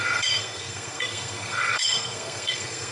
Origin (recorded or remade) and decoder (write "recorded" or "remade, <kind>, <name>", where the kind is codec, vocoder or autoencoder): remade, codec, SNAC